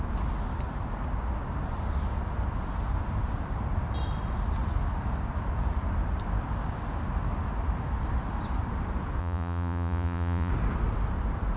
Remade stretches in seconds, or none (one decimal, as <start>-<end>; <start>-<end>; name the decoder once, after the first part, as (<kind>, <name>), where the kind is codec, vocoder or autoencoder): 9.2-10.5 (vocoder, Vocos)